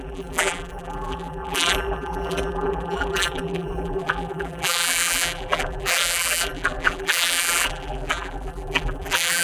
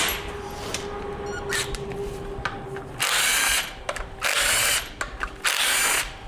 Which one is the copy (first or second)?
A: first